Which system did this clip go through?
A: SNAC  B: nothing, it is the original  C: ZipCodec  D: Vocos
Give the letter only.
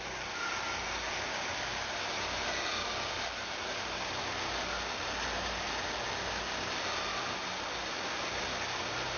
B